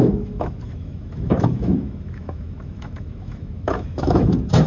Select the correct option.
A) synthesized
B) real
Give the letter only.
A